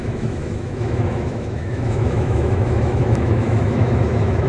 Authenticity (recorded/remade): remade